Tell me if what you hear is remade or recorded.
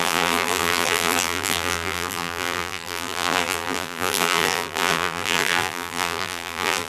remade